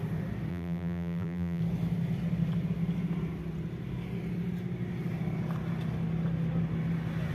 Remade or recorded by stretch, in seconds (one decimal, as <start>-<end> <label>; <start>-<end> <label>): 0.0-0.5 recorded; 0.5-1.6 remade; 1.6-7.3 recorded